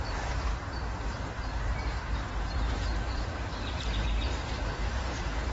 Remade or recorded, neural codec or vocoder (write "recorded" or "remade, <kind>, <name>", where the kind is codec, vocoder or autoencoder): remade, vocoder, BigVGAN v2